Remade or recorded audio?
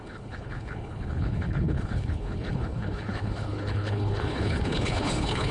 remade